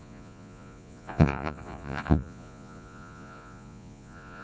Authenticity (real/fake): fake